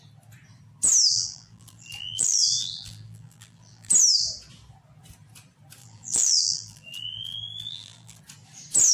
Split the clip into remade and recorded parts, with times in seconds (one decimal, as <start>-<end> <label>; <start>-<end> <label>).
0.0-1.1 recorded; 1.1-3.9 remade; 3.9-5.8 recorded; 5.8-8.2 remade; 8.2-8.9 recorded